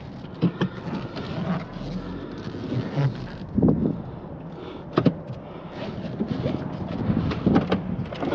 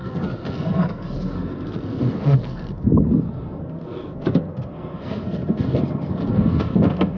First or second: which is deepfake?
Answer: second